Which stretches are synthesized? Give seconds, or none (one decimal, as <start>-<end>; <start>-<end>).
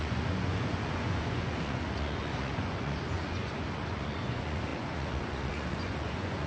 0.0-6.5